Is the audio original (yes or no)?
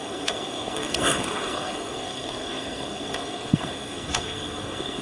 no